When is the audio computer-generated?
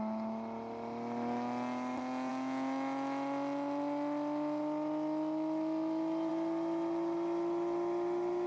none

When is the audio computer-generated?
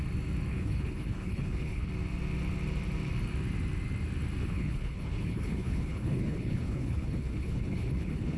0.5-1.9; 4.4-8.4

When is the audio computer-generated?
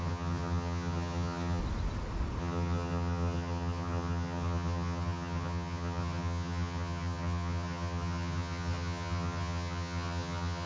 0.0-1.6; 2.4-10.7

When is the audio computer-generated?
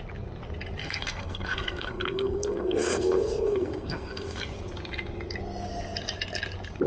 0.8-4.4